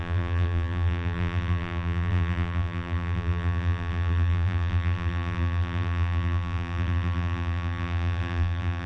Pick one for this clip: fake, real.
fake